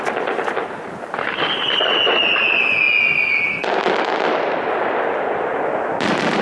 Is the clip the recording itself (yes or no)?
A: yes